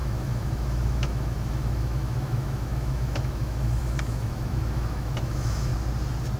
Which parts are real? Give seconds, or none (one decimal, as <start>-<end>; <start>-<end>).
5.7-6.4